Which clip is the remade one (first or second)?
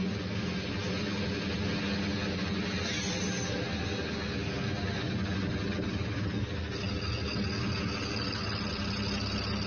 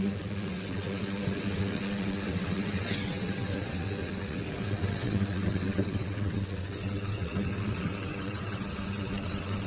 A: second